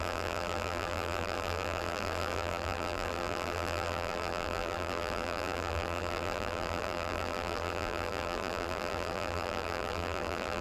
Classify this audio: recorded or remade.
remade